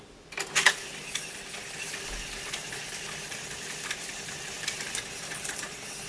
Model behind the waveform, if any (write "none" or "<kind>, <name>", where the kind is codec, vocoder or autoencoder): none